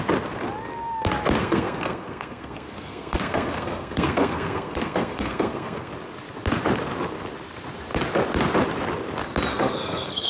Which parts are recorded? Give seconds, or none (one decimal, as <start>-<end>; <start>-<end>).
0.0-1.4; 5.9-9.5